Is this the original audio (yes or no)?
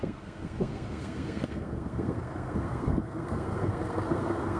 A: no